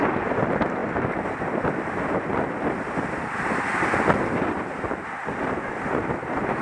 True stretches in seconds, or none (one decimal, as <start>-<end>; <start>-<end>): 0.8-4.2